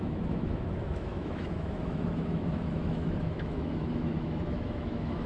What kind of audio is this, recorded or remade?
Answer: remade